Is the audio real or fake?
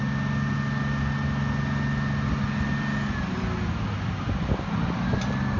real